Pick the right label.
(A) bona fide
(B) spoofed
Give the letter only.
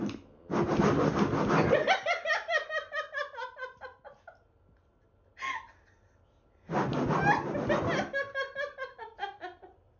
A